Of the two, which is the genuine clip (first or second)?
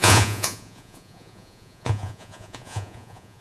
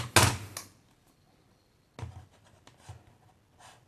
second